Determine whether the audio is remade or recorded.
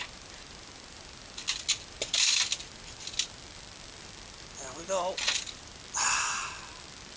recorded